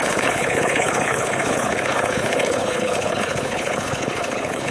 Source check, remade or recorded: remade